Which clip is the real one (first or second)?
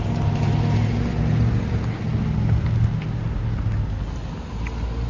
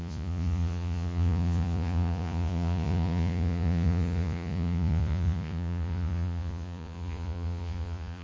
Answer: first